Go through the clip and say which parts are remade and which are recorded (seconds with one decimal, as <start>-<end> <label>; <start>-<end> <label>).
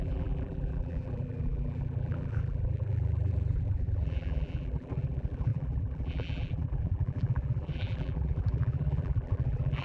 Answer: 0.0-9.8 remade